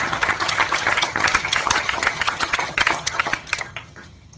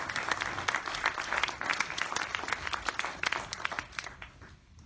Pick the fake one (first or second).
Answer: first